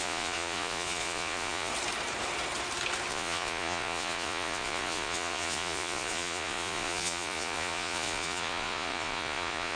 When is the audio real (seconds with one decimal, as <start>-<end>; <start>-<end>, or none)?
1.7-3.1

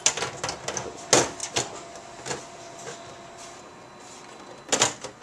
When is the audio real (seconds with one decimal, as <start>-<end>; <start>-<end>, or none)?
0.0-5.2

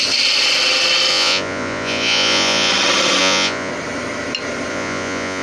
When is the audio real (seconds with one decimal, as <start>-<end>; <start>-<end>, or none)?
0.0-1.1; 2.7-3.2; 3.7-4.7